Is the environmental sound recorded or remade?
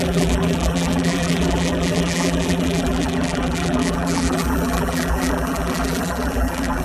remade